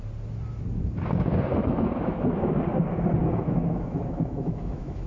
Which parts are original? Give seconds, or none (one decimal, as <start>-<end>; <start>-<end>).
0.0-1.6; 2.5-3.2